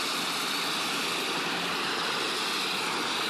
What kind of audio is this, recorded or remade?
recorded